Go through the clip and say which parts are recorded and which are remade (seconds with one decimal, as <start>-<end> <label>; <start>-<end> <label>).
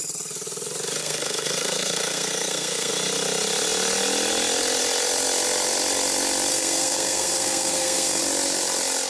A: 0.0-1.0 recorded; 1.0-2.9 remade; 2.9-6.5 recorded; 6.5-8.2 remade; 8.2-9.1 recorded